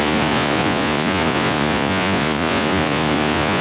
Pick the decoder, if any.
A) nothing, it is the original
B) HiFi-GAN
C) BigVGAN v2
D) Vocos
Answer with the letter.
D